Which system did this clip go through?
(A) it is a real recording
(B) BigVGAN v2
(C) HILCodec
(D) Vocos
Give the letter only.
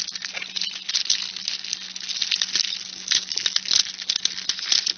A